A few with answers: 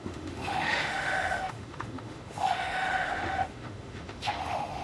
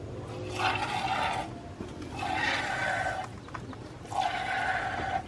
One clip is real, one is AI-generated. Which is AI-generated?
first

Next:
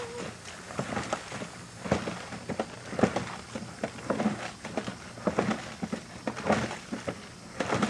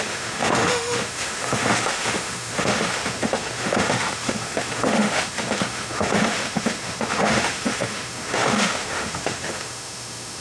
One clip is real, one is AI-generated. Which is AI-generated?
second